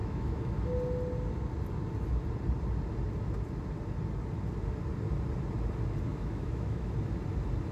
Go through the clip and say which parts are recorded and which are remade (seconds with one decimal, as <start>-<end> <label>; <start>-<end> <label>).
0.0-0.5 remade; 0.5-6.1 recorded; 6.1-6.9 remade; 6.9-7.7 recorded